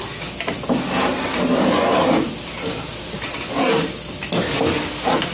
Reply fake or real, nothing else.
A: real